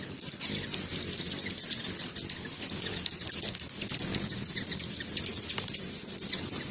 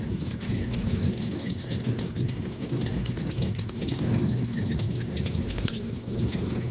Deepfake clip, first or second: second